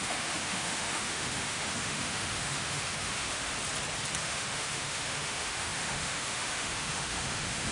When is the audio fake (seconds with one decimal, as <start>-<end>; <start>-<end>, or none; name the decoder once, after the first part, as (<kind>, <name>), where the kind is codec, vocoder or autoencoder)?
0.0-3.5 (autoencoder, DAC-VAE); 4.2-7.7